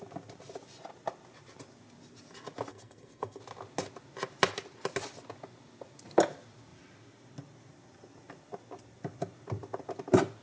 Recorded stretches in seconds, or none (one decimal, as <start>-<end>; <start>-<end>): 0.0-2.7; 3.4-10.4